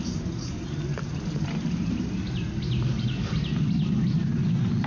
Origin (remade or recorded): recorded